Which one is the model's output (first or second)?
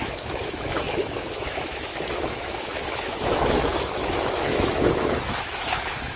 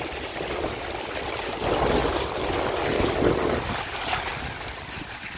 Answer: first